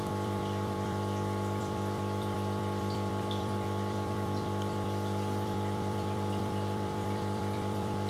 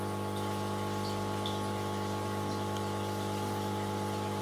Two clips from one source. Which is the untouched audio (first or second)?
second